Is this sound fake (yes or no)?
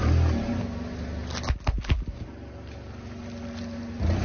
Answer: no